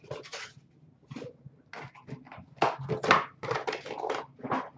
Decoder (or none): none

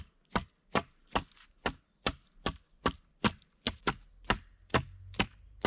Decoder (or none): none